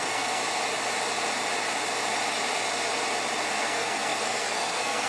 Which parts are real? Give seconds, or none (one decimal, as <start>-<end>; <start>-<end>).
0.4-3.5